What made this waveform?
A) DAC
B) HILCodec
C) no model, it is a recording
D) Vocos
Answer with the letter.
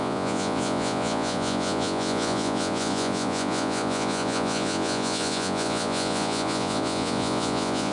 D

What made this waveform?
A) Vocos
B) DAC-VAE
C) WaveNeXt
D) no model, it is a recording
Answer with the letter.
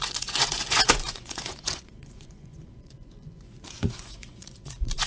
A